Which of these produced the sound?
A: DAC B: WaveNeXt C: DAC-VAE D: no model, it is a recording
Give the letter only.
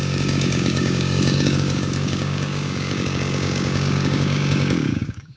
A